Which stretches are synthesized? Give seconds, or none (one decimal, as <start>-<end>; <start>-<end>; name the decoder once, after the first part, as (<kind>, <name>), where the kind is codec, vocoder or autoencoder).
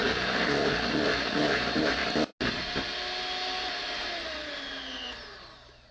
0.0-2.0 (vocoder, BigVGAN v2); 3.7-5.9